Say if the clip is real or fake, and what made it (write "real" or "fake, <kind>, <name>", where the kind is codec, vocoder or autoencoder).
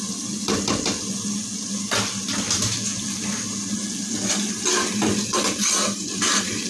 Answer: real